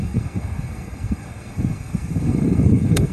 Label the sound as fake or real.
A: fake